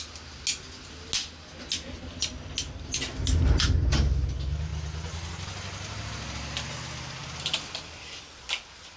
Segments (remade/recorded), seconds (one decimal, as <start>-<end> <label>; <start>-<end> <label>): 0.0-7.2 recorded; 7.2-8.2 remade; 8.2-9.0 recorded